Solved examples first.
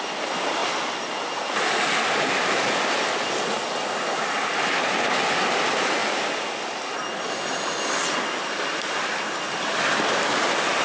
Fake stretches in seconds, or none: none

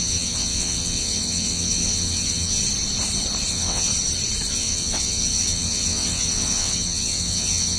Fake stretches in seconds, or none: 0.0-2.6 (vocoder, WaveNeXt); 3.5-3.9; 4.5-7.8